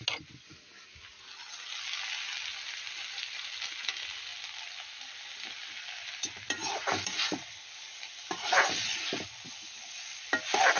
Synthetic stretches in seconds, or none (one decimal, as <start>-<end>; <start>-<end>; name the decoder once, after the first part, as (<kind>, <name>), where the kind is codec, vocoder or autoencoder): none